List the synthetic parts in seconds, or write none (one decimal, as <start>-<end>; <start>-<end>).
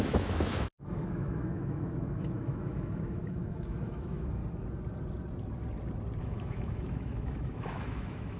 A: 0.0-4.4; 6.2-8.4